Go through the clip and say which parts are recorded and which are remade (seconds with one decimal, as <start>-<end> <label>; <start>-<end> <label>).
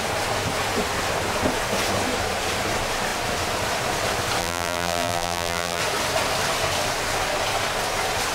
0.0-4.4 recorded; 4.4-5.8 remade; 5.8-8.3 recorded